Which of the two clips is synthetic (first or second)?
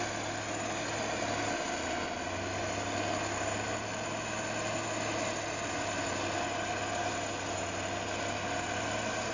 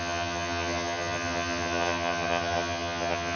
second